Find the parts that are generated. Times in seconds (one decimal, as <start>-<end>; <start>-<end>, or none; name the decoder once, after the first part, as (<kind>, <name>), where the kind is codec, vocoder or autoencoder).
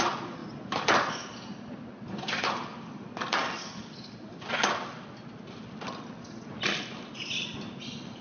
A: none